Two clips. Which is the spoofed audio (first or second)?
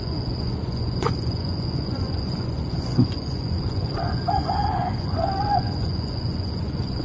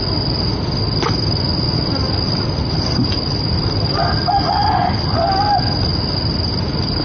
first